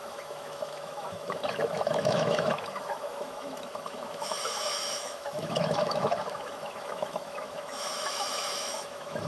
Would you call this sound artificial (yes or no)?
yes